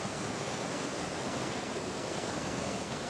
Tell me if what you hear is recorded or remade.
remade